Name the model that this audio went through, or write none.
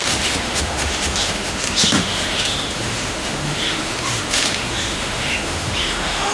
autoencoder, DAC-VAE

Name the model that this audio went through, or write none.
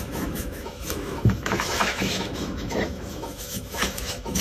autoencoder, DAC-VAE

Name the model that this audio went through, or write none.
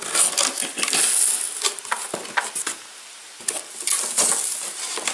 none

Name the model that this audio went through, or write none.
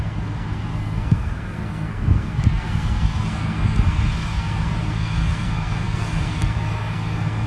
codec, SNAC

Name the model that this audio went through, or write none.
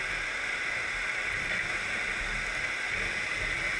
none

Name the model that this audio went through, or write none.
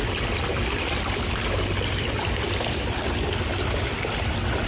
none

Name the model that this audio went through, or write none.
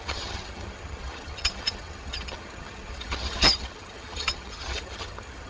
vocoder, HiFi-GAN